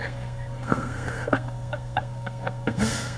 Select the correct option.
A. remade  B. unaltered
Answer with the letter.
A